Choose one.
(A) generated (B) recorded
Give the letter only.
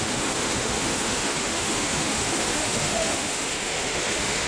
A